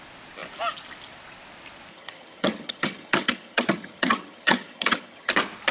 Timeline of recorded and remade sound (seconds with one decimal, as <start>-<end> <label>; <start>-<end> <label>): 0.0-1.9 recorded; 1.9-5.3 remade; 5.3-5.7 recorded